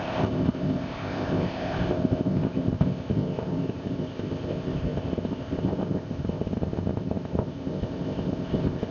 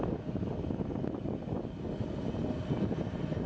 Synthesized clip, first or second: first